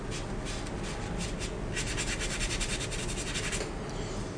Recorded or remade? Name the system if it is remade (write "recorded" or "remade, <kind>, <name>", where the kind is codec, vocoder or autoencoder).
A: recorded